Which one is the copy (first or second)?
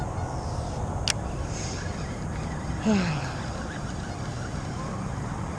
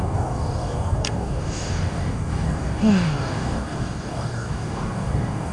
second